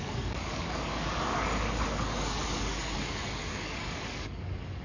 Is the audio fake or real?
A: fake